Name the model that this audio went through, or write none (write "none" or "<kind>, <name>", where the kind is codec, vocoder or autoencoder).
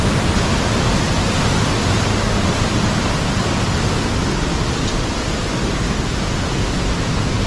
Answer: none